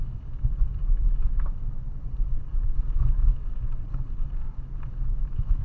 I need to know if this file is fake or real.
real